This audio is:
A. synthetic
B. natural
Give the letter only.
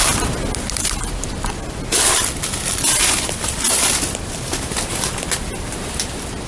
B